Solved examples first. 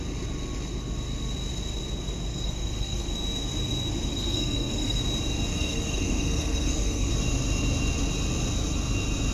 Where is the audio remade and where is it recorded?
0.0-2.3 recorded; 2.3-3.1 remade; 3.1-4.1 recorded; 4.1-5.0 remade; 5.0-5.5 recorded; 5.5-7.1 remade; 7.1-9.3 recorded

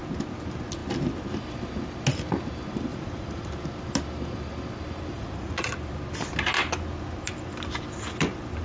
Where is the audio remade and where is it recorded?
0.0-2.9 recorded; 2.9-3.5 remade; 3.5-5.1 recorded; 5.1-5.7 remade; 5.7-8.6 recorded